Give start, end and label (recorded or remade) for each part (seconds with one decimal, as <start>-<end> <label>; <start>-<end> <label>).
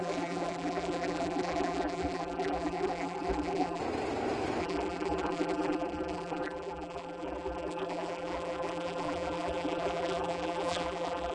0.0-3.8 remade; 3.8-4.6 recorded; 4.6-11.3 remade